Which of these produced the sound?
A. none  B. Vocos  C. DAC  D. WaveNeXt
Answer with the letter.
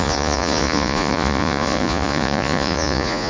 B